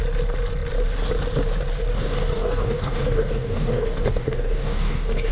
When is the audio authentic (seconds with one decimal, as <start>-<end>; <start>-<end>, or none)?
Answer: 0.0-1.9